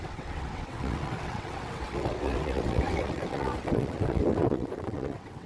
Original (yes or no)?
no